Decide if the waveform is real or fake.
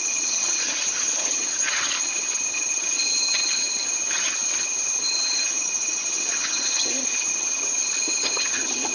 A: fake